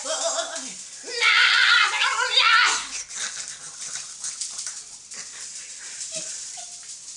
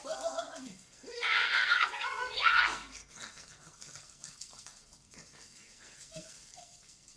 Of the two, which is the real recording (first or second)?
first